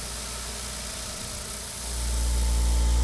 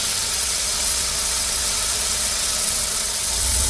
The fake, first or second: second